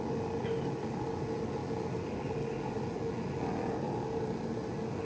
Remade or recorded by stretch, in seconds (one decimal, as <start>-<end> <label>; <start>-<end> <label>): 0.0-5.0 recorded